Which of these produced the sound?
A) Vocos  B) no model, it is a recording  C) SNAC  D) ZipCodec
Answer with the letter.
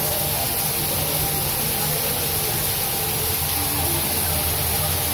B